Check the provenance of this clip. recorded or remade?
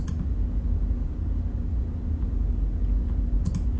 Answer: recorded